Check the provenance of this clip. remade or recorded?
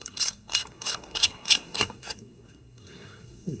remade